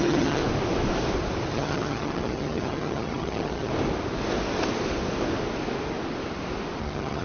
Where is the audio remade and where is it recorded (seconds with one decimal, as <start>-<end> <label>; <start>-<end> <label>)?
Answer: 0.0-0.4 remade; 0.4-1.5 recorded; 1.5-3.7 remade; 3.7-6.8 recorded; 6.8-7.2 remade